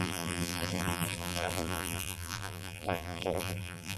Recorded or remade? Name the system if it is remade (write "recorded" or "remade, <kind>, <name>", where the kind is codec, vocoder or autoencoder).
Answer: remade, vocoder, BigVGAN v2